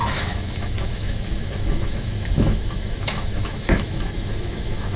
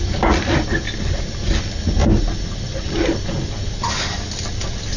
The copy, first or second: first